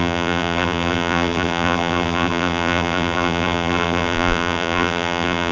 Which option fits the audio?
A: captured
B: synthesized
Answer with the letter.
B